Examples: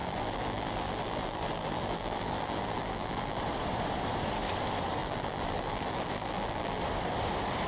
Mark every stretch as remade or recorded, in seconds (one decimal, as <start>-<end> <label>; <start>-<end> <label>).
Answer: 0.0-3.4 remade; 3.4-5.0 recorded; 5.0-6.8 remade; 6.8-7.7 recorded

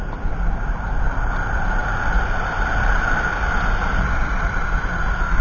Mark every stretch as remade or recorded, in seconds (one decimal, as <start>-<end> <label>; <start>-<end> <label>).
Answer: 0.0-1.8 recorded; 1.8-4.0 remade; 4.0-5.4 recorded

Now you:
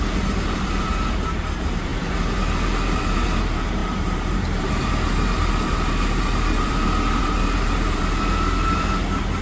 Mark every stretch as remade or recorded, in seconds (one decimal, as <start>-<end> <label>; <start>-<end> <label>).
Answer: 0.0-0.9 remade; 0.9-1.4 recorded; 1.4-9.4 remade

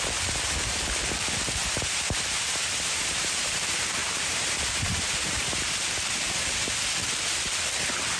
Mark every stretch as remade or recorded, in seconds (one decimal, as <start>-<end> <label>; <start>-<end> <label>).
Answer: 0.0-1.6 recorded; 1.6-3.3 remade; 3.3-4.0 recorded; 4.0-5.8 remade; 5.8-8.2 recorded

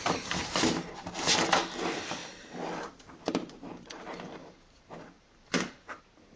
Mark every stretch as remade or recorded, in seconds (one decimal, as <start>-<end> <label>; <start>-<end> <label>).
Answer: 0.0-0.4 recorded; 0.4-1.3 remade; 1.3-2.2 recorded; 2.2-6.0 remade; 6.0-6.4 recorded